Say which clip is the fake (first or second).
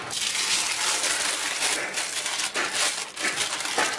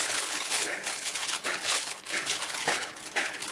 second